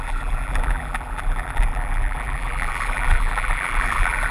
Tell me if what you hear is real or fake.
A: fake